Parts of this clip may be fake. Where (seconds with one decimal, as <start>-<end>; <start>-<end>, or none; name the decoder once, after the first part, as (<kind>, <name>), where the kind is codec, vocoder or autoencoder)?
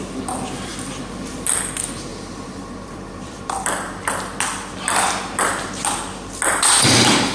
0.7-1.6 (vocoder, BigVGAN v2); 2.1-3.6